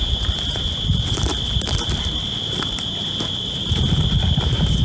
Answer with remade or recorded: remade